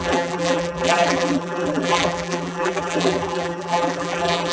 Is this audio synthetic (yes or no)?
yes